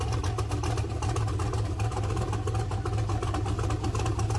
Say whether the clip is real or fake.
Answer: real